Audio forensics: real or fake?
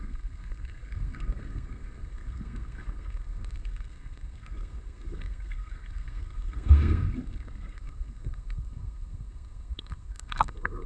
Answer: fake